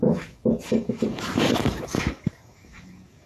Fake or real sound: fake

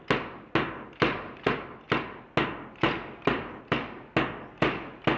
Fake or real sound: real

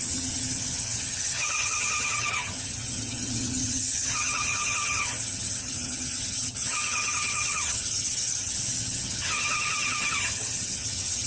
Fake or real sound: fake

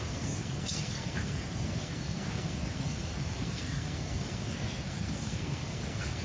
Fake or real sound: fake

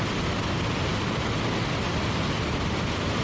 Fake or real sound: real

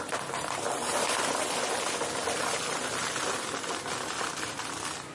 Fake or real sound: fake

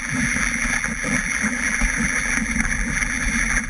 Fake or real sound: fake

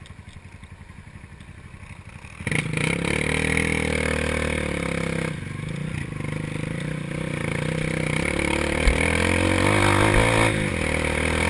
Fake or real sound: real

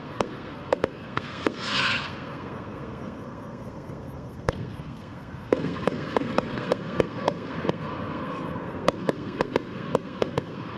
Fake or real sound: fake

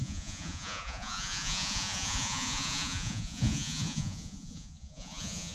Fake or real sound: fake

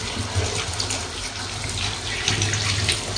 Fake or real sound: real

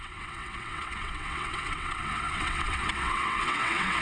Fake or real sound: fake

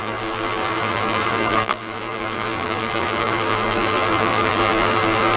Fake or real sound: fake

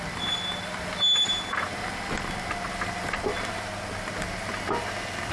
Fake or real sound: real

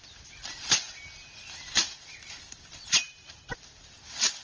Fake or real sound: real